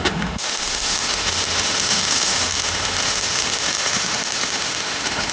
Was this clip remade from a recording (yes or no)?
yes